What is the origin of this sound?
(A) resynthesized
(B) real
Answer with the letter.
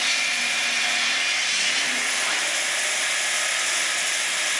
B